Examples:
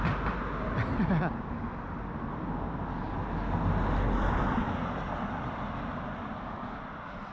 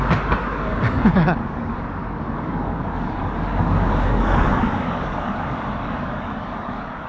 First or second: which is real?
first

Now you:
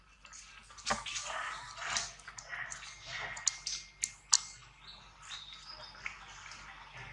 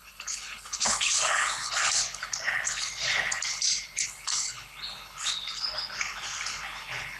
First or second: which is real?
first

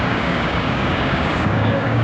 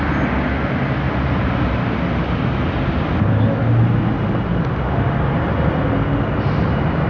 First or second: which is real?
second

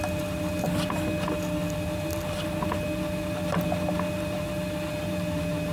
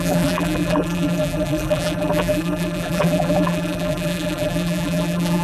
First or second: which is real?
first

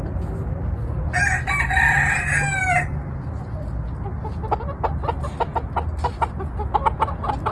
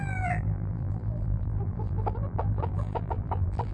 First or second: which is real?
first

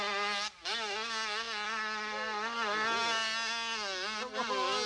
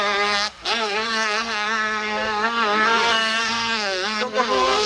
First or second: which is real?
first